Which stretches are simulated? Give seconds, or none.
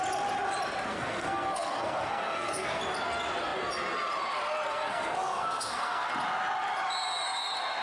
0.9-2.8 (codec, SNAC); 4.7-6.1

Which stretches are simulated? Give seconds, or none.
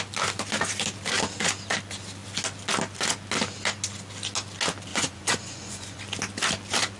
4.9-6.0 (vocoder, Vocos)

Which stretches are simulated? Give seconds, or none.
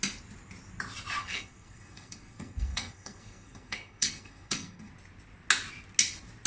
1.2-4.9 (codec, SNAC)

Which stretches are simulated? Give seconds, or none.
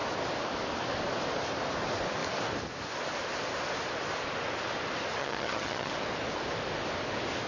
5.2-5.9 (vocoder, HiFi-GAN)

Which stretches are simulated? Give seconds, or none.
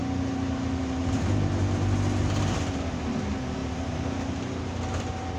none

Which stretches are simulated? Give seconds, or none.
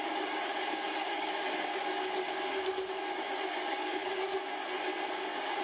0.0-4.3 (codec, DAC); 5.1-5.6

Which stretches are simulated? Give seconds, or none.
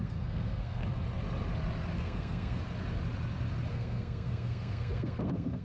0.0-0.8 (codec, SNAC); 2.0-2.6; 3.7-5.6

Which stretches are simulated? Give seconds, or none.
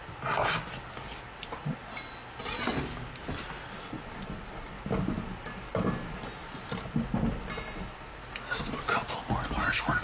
none